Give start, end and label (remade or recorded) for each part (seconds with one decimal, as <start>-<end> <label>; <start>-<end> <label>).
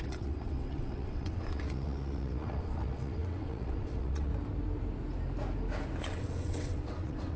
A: 0.0-4.3 remade; 4.3-6.0 recorded; 6.0-7.4 remade